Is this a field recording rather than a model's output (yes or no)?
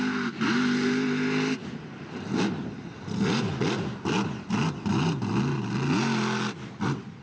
yes